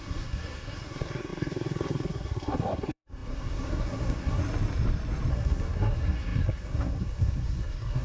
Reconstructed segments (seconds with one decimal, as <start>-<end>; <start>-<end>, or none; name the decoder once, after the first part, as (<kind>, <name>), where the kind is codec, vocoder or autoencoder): 0.0-4.4 (codec, SNAC); 5.3-8.0